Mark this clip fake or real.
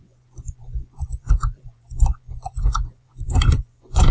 fake